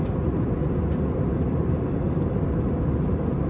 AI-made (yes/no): no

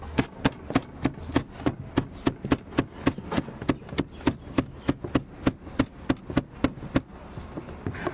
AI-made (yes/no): no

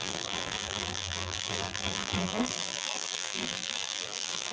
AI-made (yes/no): yes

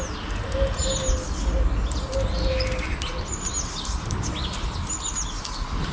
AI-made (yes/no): no